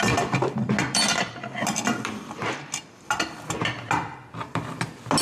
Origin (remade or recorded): recorded